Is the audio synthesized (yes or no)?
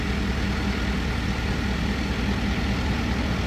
no